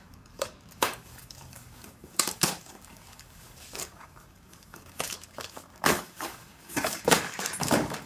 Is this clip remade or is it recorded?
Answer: remade